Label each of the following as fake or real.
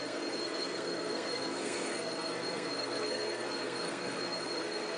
fake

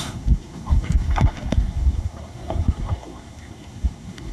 fake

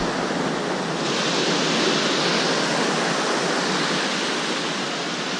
real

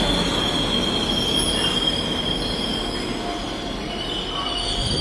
real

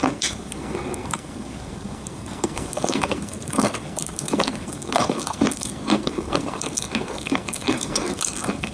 fake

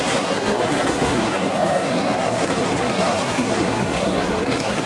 fake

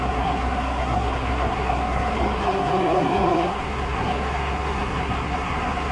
fake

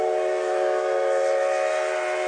real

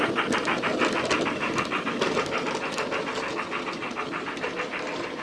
real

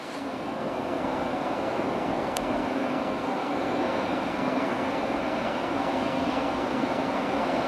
fake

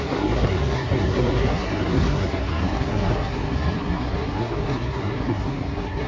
fake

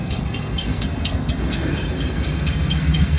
fake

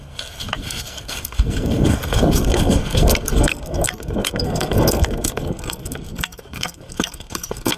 fake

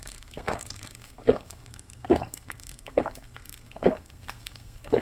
fake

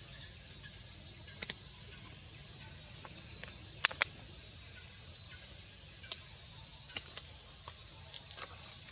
real